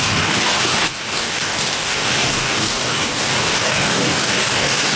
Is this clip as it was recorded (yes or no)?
no